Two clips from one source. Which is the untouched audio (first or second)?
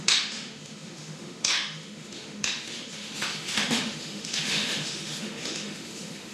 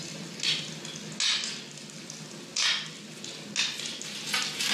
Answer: second